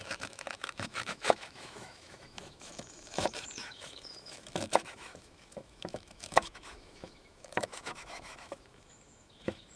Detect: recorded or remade remade